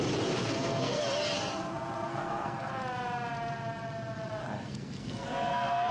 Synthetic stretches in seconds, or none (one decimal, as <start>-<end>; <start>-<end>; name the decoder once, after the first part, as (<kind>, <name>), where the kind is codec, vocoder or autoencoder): 0.4-1.0 (codec, SNAC); 2.1-2.7; 4.4-5.9